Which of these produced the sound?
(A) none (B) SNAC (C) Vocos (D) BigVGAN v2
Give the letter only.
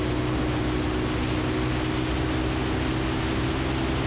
A